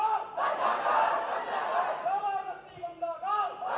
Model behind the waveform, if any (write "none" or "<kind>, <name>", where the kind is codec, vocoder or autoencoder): none